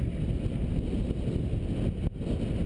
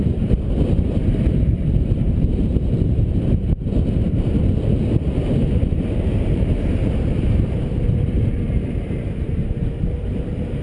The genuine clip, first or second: first